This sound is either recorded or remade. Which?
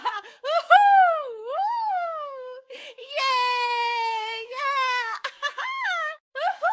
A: remade